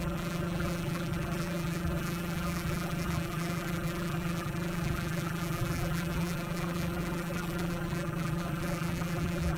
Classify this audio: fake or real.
fake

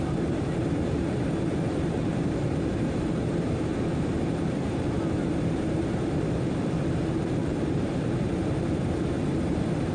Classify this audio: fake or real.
fake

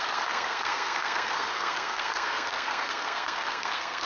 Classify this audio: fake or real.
fake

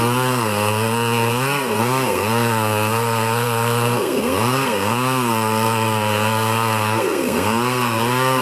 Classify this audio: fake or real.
fake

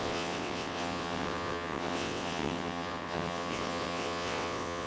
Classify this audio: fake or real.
fake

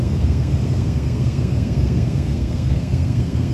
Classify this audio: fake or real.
fake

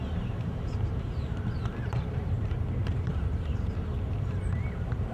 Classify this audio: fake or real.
fake